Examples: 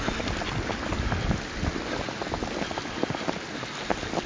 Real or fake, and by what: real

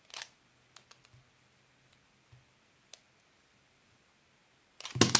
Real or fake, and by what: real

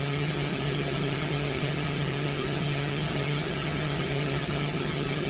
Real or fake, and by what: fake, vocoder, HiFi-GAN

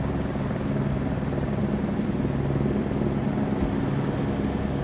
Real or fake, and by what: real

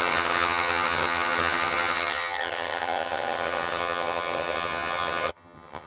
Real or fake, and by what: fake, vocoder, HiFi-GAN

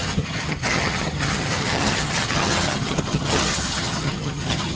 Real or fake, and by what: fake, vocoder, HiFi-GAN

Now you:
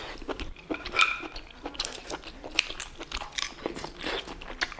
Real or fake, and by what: real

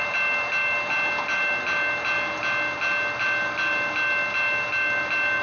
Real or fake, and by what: real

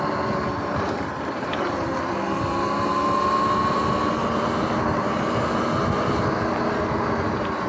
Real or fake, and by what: real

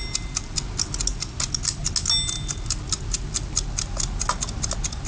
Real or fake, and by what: real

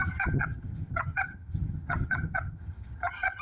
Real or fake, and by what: fake, vocoder, HiFi-GAN